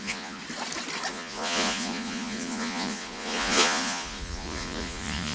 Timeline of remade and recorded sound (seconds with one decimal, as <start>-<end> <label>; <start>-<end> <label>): 0.0-0.4 remade; 0.4-1.1 recorded; 1.1-5.3 remade